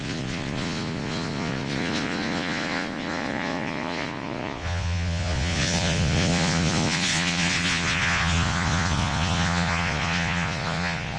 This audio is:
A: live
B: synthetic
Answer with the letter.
B